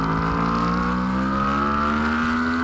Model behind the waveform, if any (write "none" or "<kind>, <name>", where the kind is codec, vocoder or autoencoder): none